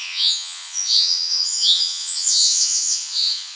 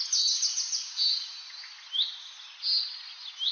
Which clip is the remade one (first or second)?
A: first